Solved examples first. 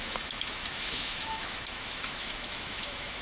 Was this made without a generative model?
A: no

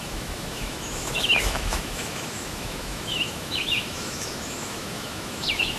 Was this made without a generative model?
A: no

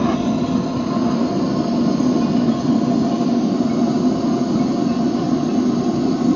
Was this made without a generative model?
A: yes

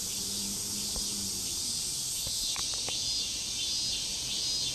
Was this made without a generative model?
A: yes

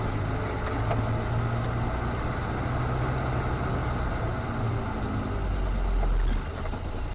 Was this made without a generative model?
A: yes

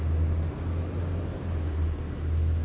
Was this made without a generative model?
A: yes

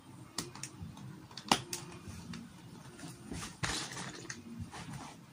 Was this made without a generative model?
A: yes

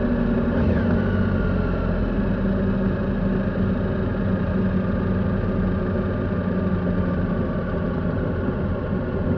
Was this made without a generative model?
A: yes